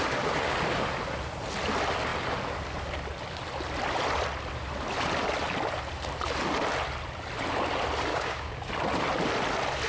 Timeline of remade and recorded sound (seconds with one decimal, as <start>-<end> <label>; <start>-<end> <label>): 0.0-8.1 recorded; 8.1-8.7 remade; 8.7-9.9 recorded